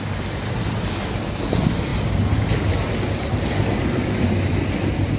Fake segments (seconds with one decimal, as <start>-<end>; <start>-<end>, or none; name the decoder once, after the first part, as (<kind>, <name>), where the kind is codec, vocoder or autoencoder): none